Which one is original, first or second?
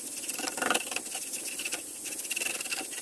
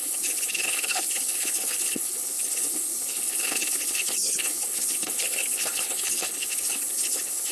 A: first